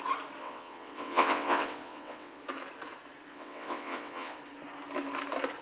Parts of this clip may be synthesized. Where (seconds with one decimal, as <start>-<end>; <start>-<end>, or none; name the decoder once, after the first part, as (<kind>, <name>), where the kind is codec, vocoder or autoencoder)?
0.4-2.4 (vocoder, WaveNeXt); 3.3-4.4